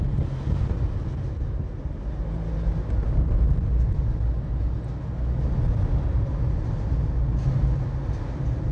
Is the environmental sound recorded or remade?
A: recorded